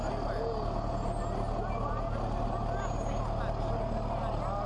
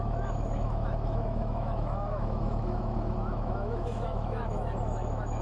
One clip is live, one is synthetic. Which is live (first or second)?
first